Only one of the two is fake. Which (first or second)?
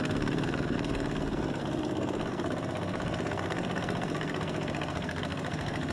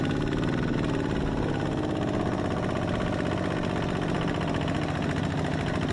first